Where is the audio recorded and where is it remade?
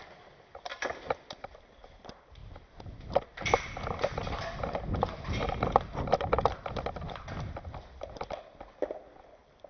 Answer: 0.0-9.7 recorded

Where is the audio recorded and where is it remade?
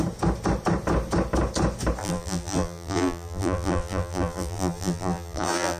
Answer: 0.0-2.0 recorded; 2.0-5.8 remade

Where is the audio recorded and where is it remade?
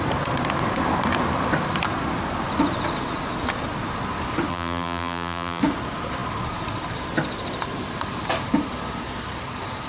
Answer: 0.0-4.5 recorded; 4.5-5.6 remade; 5.6-9.9 recorded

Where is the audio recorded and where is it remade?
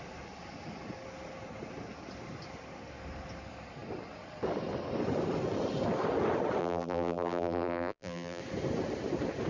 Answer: 0.0-6.6 recorded; 6.6-8.4 remade; 8.4-9.5 recorded